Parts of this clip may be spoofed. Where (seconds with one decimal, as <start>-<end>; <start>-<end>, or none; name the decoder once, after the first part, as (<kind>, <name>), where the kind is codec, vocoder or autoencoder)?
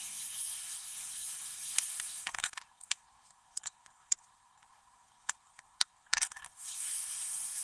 0.0-7.6 (codec, SNAC)